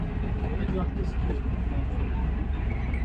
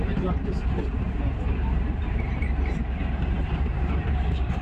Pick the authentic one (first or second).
first